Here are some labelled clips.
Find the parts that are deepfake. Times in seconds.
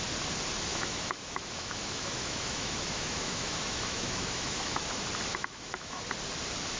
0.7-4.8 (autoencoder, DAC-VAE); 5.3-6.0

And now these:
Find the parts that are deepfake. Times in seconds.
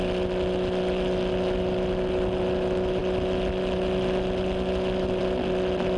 none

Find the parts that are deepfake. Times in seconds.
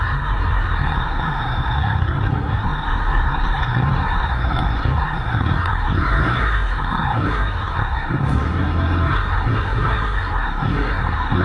0.0-11.4 (codec, SNAC)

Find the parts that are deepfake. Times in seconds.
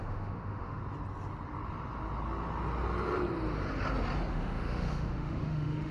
0.0-0.8 (autoencoder, DAC-VAE); 4.3-5.9